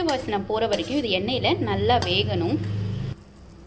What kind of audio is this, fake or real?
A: real